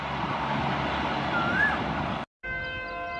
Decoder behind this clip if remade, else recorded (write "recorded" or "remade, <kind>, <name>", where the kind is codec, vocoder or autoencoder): recorded